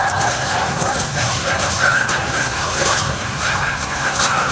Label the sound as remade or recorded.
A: remade